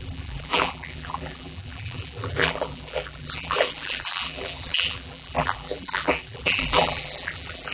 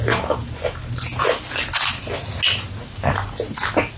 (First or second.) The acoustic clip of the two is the second